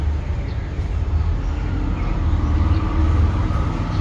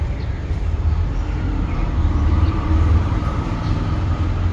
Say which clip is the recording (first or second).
first